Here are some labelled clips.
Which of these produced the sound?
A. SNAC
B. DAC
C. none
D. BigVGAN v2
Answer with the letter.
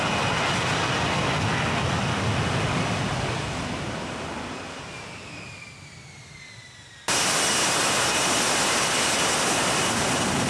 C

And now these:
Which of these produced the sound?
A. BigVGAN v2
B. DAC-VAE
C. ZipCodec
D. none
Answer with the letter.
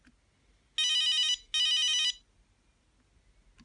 D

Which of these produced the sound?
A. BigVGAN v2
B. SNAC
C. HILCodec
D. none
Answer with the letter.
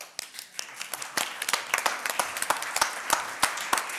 D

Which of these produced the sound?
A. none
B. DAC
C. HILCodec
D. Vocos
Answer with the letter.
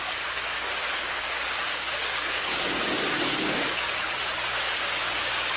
B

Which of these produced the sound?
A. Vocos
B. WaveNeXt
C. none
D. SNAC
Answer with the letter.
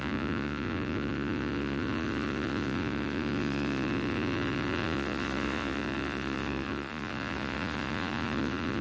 A